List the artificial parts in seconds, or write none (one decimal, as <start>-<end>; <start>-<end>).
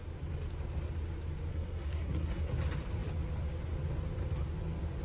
1.5-2.5